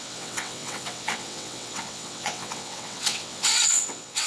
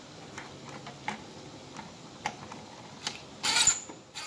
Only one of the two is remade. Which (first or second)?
first